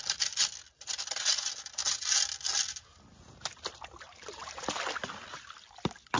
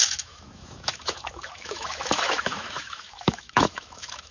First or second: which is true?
first